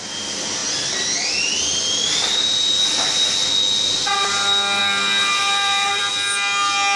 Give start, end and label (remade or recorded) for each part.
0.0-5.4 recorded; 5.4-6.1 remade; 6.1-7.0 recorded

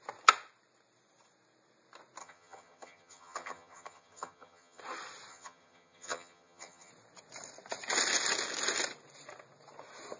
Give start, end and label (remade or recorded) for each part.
0.0-2.2 recorded; 2.2-4.8 remade; 4.8-5.3 recorded; 5.3-6.9 remade; 6.9-10.2 recorded

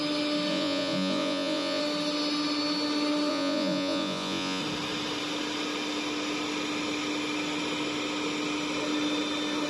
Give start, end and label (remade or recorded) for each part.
0.0-0.5 recorded; 0.5-1.8 remade; 1.8-3.3 recorded; 3.3-4.6 remade; 4.6-9.7 recorded